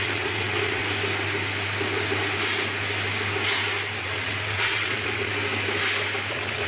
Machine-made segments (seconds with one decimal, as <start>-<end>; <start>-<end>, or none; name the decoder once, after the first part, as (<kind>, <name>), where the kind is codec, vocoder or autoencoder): 0.0-0.8 (vocoder, WaveNeXt); 4.0-5.3; 6.3-6.7